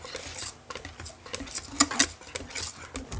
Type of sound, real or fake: real